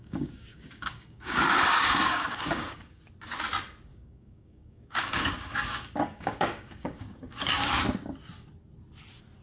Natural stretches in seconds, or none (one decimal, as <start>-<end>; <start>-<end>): 3.0-3.9; 7.7-9.4